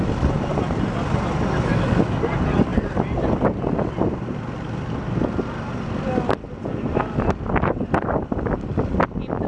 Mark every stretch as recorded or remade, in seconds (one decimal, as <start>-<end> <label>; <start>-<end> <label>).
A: 0.0-9.5 recorded